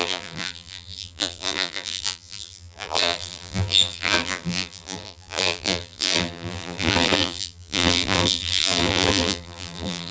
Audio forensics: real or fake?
fake